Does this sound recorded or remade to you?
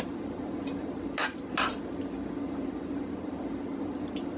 recorded